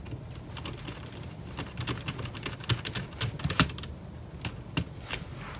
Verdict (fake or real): real